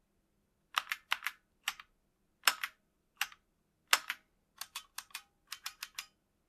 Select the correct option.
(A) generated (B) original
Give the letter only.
B